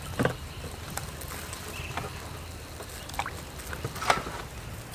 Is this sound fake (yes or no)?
no